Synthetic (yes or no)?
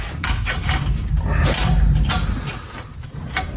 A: no